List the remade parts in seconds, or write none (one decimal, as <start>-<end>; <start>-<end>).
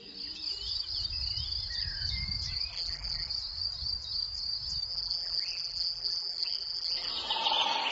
2.7-3.3; 4.9-7.1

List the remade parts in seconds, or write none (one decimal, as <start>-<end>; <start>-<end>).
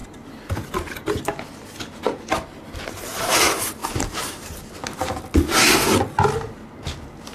3.8-4.7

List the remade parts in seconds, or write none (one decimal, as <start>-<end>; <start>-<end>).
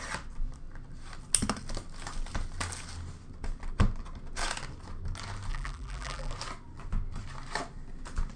5.5-6.3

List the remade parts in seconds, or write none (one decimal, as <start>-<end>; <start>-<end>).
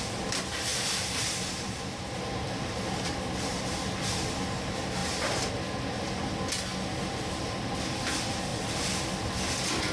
0.7-3.6; 5.0-5.5; 8.5-9.3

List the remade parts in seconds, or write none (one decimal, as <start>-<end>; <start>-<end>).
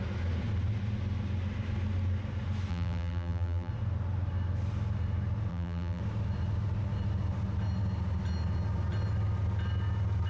2.7-3.7; 5.5-6.0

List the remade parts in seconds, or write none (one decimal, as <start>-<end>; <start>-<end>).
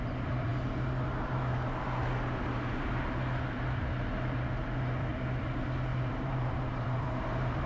5.9-7.7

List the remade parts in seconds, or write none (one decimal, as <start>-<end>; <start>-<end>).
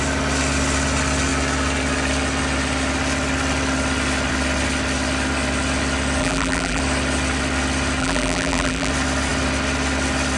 6.2-6.8; 8.0-8.9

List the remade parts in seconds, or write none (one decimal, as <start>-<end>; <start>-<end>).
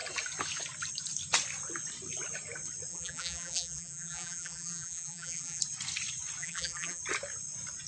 2.9-5.6; 6.4-7.0